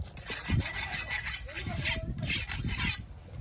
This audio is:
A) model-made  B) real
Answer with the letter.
B